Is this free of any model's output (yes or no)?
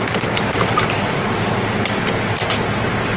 yes